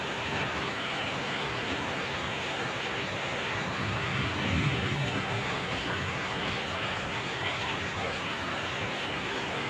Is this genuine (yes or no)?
no